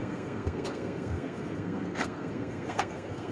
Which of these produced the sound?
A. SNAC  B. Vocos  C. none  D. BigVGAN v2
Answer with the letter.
A